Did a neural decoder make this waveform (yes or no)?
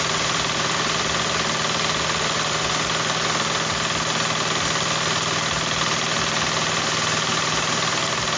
no